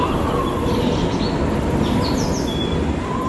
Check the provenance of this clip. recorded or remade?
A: recorded